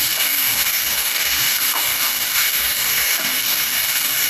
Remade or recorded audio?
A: remade